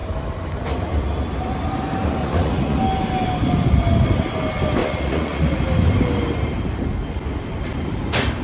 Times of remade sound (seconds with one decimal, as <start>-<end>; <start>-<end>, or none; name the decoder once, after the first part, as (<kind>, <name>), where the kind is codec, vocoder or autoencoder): 2.2-2.8 (vocoder, Vocos); 4.8-5.6